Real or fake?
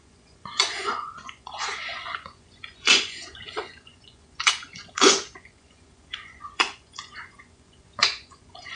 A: fake